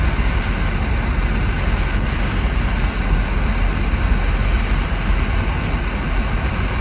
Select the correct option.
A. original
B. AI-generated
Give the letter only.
A